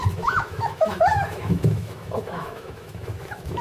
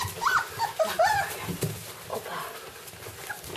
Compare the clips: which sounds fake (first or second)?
first